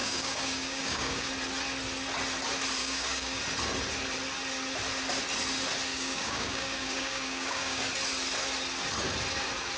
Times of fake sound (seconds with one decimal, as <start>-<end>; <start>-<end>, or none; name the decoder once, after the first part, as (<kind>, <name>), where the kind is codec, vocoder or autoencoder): 0.0-1.3 (codec, DAC); 2.8-3.4; 5.9-7.8

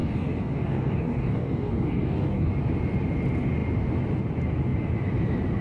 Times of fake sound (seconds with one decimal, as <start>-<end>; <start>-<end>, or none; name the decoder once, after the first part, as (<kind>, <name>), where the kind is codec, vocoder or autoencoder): 0.0-2.5 (codec, DAC)

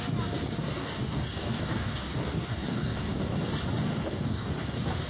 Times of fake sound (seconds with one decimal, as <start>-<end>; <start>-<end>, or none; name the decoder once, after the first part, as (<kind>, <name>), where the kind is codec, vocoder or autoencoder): 0.8-3.5 (codec, DAC); 3.9-4.5

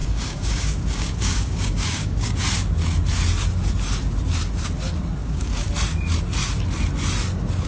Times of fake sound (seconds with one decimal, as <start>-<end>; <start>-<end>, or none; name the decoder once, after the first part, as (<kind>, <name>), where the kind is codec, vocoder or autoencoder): 0.0-2.4 (codec, DAC); 5.2-5.7

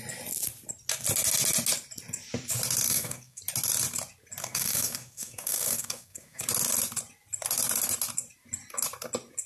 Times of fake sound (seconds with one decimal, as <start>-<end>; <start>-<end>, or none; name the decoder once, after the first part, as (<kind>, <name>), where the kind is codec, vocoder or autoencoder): 2.9-3.4 (codec, DAC); 4.4-6.4

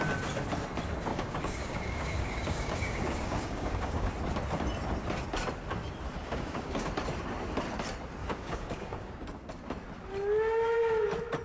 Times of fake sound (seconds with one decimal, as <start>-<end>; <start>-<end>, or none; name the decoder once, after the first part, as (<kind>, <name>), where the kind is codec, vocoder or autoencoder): 1.1-4.1 (codec, DAC); 6.2-6.9; 8.2-9.5

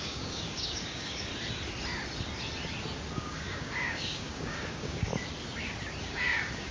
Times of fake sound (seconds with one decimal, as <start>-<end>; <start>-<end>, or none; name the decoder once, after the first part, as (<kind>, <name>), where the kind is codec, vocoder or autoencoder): 0.0-1.3 (codec, DAC); 3.2-5.1; 6.0-6.7